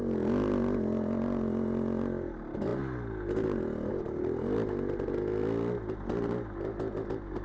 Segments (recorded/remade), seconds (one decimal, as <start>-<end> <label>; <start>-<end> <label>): 0.0-7.4 recorded